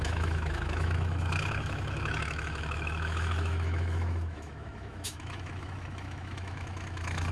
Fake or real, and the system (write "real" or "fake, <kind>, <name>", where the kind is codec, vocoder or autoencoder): fake, autoencoder, DAC-VAE